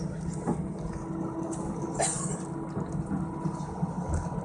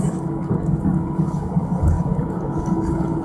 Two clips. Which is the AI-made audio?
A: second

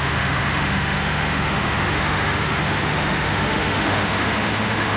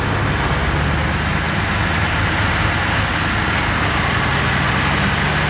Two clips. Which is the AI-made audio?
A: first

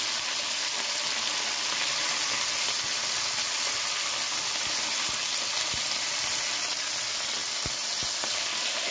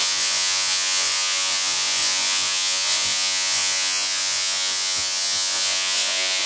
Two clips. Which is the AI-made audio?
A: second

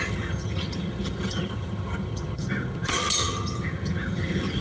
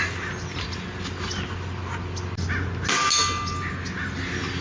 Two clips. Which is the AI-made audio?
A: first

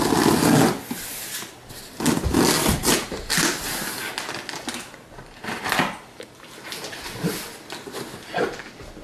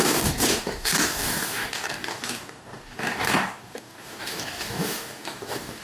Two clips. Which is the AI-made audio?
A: second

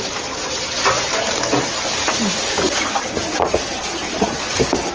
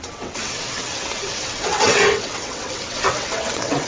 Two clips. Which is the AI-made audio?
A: second